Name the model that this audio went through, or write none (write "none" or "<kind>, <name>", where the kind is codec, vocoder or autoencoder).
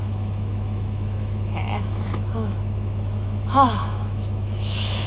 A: autoencoder, DAC-VAE